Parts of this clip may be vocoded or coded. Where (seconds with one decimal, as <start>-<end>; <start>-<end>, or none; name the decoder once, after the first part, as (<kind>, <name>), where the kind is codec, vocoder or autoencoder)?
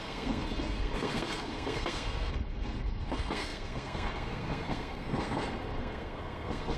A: 0.0-6.8 (codec, SNAC)